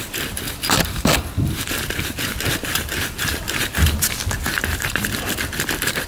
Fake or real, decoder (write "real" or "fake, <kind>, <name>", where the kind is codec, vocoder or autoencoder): fake, vocoder, BigVGAN v2